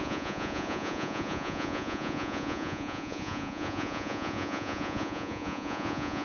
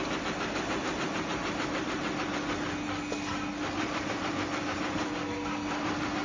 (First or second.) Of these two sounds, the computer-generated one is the first